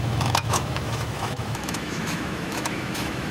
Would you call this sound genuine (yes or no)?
no